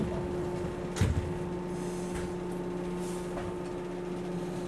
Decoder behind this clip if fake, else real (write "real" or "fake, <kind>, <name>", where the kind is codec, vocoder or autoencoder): real